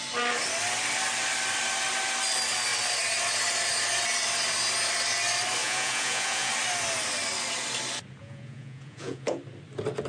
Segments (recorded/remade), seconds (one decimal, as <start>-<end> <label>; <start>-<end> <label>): 0.0-5.6 recorded; 5.6-6.5 remade; 6.5-8.2 recorded; 8.2-9.4 remade; 9.4-10.1 recorded